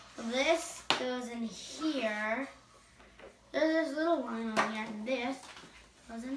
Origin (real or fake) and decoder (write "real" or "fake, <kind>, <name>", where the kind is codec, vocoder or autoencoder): real